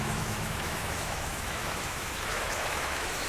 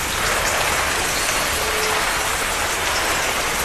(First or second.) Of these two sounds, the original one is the second